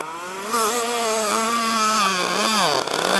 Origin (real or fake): real